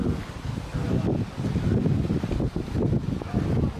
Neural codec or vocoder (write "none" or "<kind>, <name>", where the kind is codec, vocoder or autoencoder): none